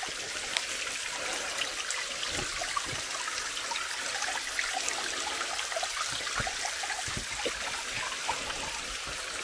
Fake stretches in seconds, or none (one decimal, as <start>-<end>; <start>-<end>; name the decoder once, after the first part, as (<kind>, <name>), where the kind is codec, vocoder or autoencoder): none